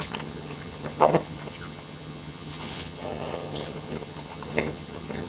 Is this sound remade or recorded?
remade